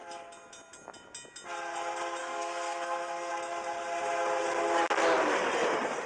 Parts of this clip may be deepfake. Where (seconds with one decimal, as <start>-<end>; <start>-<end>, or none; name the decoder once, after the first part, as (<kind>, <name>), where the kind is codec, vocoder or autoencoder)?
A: 2.2-3.3 (codec, SNAC)